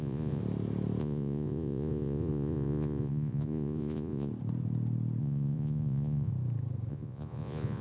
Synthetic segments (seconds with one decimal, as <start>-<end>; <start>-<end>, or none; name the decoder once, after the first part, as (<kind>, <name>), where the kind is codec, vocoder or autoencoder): 0.0-0.4 (vocoder, Vocos); 1.0-4.3; 5.2-6.3; 6.9-7.8